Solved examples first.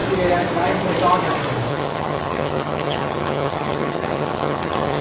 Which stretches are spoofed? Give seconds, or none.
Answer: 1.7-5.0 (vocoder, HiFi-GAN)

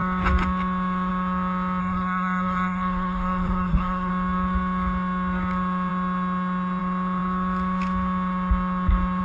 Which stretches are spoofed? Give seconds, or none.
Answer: 1.8-4.1 (codec, SNAC)

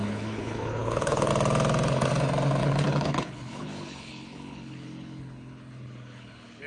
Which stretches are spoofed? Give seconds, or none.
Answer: 0.0-1.3 (codec, HILCodec); 2.6-6.7